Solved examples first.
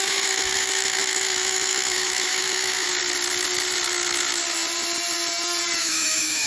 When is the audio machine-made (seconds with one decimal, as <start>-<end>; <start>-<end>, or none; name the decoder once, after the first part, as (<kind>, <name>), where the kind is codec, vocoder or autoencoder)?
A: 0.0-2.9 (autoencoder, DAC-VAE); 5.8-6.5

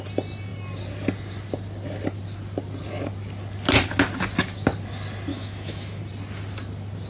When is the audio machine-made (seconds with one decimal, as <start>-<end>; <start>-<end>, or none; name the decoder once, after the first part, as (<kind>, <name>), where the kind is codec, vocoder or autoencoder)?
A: 5.3-6.0 (autoencoder, DAC-VAE)

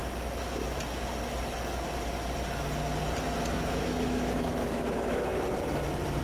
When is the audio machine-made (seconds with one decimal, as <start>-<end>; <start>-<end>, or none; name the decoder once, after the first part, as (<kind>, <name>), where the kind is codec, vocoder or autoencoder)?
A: 3.7-5.3 (autoencoder, DAC-VAE)

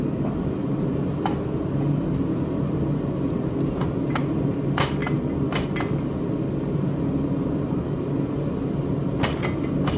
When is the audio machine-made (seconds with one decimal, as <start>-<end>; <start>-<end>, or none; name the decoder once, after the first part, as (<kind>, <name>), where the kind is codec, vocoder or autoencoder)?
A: none

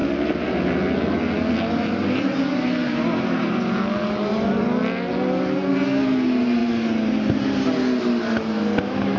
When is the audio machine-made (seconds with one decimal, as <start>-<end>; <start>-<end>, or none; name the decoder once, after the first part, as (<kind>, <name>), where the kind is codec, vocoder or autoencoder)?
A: none

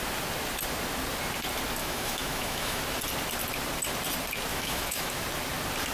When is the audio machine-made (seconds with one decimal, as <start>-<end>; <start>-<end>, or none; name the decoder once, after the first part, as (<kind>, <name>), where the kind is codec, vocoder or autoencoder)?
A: 1.8-2.8 (autoencoder, DAC-VAE); 4.5-5.1

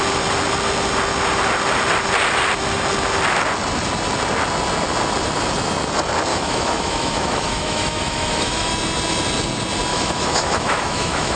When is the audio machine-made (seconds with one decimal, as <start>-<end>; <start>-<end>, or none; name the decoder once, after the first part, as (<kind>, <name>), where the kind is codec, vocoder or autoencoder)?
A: 6.3-8.7 (autoencoder, DAC-VAE); 9.9-11.4

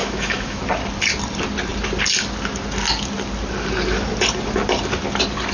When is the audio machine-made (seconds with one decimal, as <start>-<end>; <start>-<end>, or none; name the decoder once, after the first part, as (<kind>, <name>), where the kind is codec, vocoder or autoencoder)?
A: 0.0-0.6 (autoencoder, DAC-VAE)